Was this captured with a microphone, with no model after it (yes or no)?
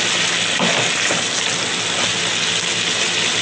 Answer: yes